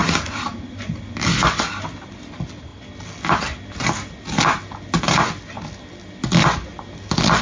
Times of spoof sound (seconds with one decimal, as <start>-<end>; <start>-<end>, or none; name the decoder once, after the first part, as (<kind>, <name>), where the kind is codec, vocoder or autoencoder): none